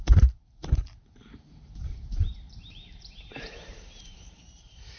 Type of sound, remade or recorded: remade